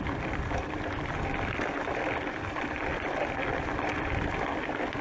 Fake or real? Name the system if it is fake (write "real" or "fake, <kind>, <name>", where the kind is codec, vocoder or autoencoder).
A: real